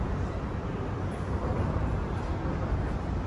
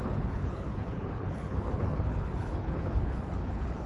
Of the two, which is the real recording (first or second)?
first